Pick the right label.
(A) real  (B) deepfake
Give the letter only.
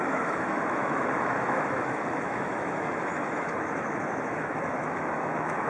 B